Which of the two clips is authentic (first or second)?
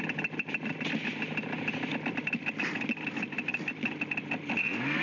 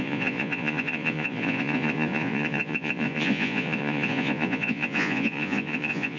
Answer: first